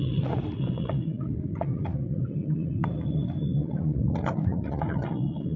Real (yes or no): no